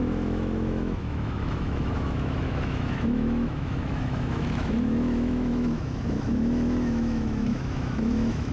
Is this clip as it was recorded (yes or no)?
no